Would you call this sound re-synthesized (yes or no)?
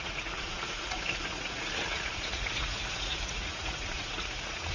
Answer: yes